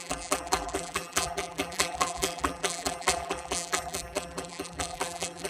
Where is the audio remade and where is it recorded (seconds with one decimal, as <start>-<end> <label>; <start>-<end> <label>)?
0.0-5.5 remade